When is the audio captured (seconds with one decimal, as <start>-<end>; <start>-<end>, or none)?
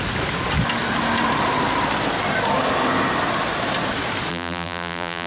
0.0-4.3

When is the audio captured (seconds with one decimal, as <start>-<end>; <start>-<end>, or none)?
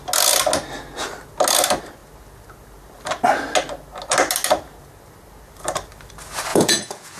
0.0-6.5